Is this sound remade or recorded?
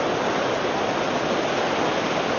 recorded